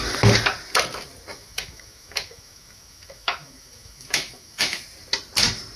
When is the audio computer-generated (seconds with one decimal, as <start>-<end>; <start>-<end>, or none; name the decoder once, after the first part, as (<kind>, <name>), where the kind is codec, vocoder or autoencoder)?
1.3-4.8 (autoencoder, DAC-VAE)